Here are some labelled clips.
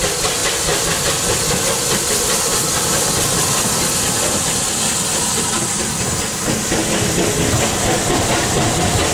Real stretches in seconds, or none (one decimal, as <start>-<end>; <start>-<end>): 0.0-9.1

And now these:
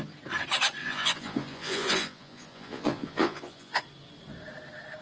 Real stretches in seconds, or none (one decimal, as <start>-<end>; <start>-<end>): 0.0-0.8; 3.8-5.0

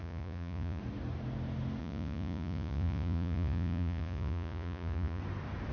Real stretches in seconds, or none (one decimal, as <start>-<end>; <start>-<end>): 0.8-1.8; 5.2-5.7

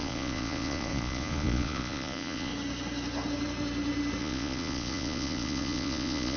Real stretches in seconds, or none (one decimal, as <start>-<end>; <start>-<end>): 2.5-4.2